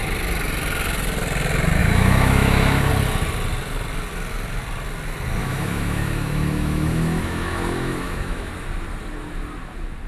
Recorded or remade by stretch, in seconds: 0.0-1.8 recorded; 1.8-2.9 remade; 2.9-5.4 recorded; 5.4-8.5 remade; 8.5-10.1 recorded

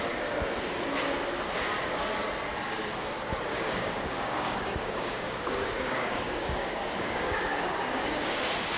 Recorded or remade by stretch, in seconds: 0.0-3.5 recorded; 3.5-8.4 remade; 8.4-8.8 recorded

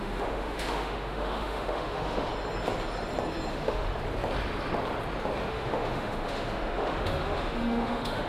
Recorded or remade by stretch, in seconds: 0.0-2.3 remade; 2.3-3.5 recorded; 3.5-3.9 remade; 3.9-5.5 recorded; 5.5-8.3 remade

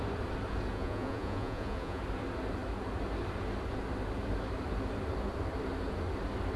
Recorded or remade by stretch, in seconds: 0.0-0.7 recorded; 0.7-2.0 remade; 2.0-6.6 recorded

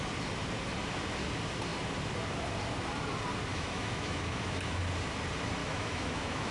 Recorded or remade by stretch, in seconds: 0.0-3.5 recorded; 3.5-4.8 remade; 4.8-5.6 recorded; 5.6-6.5 remade